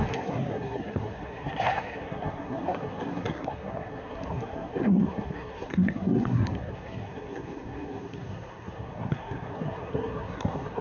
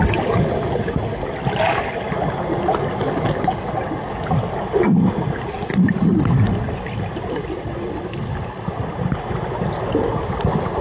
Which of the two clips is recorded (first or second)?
second